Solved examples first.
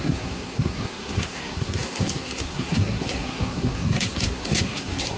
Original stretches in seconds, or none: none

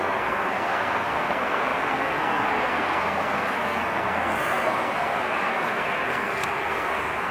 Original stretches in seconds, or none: none

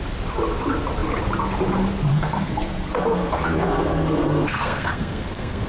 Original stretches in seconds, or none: 0.0-2.1

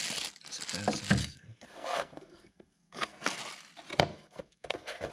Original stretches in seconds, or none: 0.0-1.2; 3.4-4.1

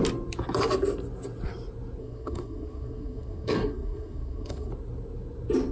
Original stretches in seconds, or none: 0.0-2.0; 4.7-5.7

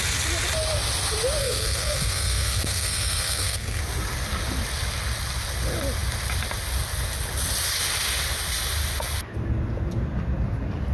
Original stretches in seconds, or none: 0.0-1.4; 3.8-10.9

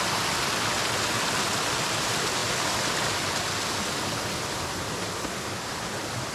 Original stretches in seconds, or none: 0.0-6.3

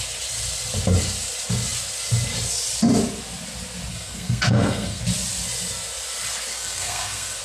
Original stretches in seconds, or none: 0.0-3.9; 5.0-6.5